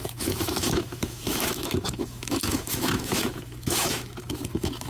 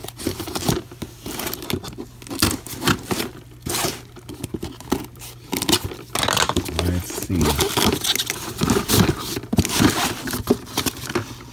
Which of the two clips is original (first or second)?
second